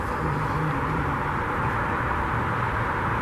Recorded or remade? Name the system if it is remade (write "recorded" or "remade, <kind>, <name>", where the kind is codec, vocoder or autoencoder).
remade, vocoder, BigVGAN v2